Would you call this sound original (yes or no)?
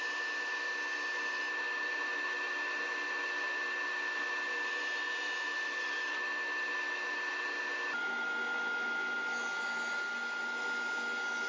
yes